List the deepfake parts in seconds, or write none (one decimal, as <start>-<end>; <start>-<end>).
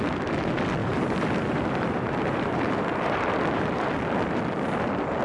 0.8-3.9